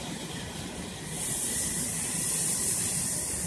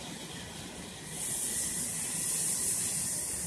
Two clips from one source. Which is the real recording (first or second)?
second